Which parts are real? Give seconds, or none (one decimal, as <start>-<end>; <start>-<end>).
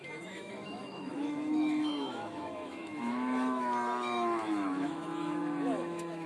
none